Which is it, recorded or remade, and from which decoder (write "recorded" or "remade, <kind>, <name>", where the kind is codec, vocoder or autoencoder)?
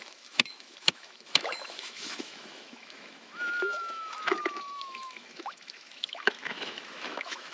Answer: remade, autoencoder, DAC-VAE